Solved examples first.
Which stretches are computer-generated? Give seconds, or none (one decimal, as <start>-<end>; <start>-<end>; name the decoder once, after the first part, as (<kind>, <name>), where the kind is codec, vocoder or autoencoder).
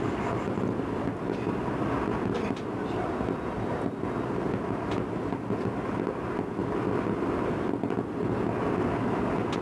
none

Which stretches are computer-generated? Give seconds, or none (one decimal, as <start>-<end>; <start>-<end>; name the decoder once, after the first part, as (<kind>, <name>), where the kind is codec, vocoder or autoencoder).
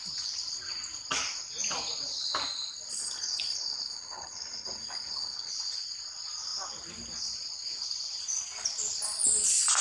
3.0-5.5 (codec, HILCodec)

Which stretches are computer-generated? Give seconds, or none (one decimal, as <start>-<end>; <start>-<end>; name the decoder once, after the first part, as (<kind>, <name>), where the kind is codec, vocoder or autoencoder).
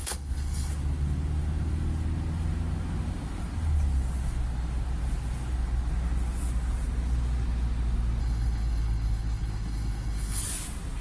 0.0-0.7 (codec, HILCodec); 8.2-10.4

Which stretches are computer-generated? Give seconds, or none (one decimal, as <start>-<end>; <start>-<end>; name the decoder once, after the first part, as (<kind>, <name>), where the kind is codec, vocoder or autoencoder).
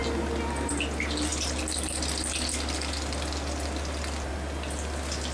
none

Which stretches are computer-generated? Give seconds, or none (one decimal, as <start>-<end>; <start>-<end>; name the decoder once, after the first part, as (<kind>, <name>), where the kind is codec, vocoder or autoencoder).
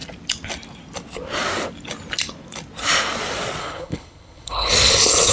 3.6-4.7 (codec, HILCodec)